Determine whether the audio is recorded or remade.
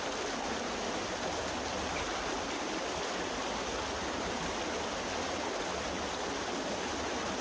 recorded